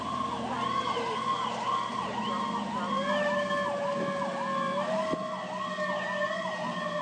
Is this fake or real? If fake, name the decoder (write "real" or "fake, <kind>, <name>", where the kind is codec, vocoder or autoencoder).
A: real